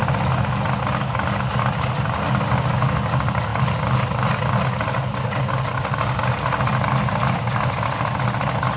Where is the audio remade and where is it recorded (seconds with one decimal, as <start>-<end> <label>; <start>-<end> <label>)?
0.0-8.8 recorded